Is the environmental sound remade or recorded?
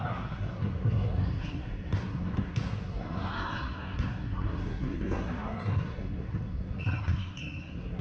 remade